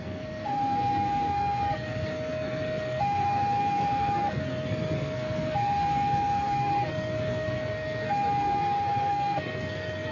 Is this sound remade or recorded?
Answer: remade